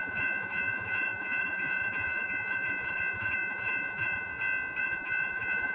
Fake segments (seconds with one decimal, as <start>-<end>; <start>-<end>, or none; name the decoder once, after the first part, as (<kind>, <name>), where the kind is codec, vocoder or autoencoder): 0.0-4.3 (vocoder, Vocos); 4.8-5.7